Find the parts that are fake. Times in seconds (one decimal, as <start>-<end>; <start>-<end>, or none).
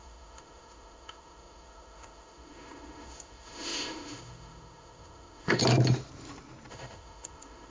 0.0-5.6; 6.7-7.7